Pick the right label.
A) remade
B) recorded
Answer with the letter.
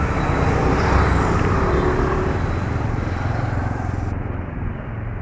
B